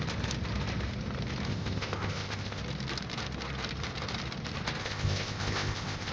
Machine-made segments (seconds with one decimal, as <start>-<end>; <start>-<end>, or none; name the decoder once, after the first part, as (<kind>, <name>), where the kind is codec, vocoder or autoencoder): 1.5-2.6 (codec, ZipCodec); 4.8-6.1